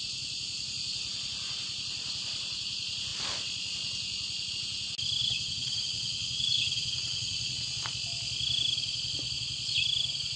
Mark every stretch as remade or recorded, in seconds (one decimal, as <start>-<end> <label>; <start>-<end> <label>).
0.0-5.2 recorded; 5.2-7.8 remade; 7.8-10.4 recorded